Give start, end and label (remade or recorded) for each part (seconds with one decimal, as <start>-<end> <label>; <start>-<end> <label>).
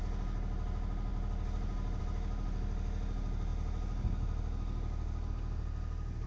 0.0-6.3 recorded